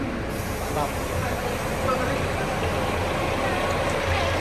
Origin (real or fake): real